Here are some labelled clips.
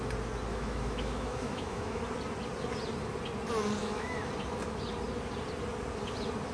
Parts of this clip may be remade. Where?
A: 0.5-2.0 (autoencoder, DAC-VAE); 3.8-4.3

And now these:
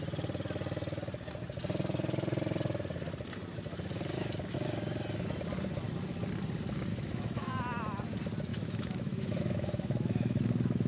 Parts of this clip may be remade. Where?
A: 6.9-7.5 (autoencoder, DAC-VAE); 8.5-10.9

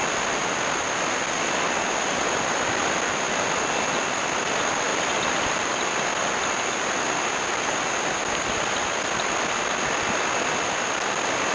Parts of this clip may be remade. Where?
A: none